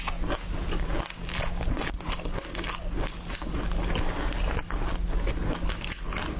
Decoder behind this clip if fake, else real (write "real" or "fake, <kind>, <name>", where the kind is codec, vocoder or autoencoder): real